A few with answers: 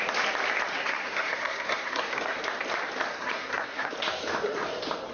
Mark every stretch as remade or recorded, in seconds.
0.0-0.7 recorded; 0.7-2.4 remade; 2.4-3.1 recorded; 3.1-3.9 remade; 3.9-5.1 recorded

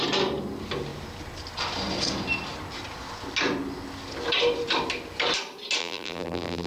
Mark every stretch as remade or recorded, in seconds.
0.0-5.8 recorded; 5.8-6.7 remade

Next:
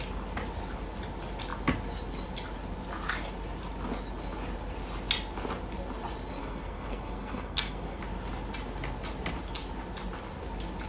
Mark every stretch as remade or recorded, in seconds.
0.0-6.4 recorded; 6.4-8.0 remade; 8.0-10.9 recorded